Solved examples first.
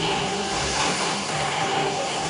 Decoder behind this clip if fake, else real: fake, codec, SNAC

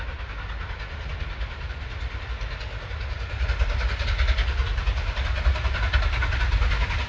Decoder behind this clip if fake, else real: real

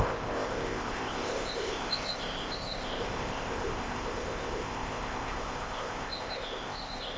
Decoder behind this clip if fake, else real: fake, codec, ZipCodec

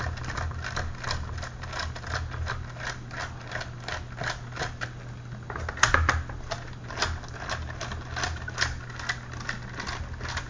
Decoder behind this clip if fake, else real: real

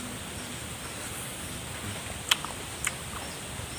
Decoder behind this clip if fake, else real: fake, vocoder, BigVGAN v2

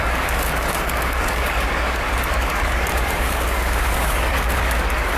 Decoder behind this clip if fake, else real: fake, codec, DAC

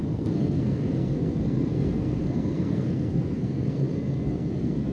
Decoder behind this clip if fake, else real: fake, codec, SNAC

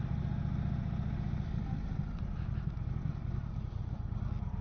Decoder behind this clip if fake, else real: real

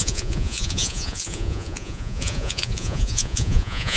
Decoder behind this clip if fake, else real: fake, vocoder, Vocos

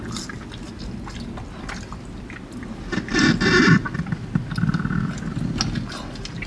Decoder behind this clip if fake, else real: real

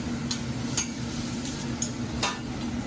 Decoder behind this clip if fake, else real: real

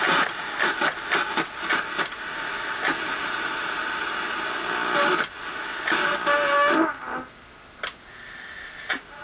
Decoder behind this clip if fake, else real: real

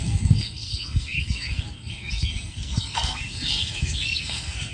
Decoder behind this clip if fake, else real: fake, codec, SNAC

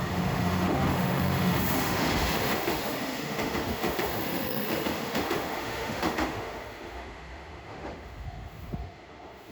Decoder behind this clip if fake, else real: fake, autoencoder, DAC-VAE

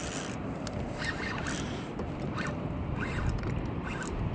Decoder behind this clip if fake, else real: real